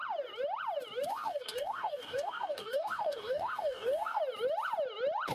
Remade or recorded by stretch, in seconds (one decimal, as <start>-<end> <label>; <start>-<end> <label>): 0.0-1.1 recorded; 1.1-4.2 remade; 4.2-5.3 recorded